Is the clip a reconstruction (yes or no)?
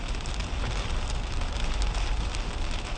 no